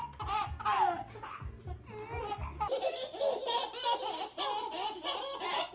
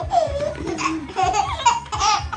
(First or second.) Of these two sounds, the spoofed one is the second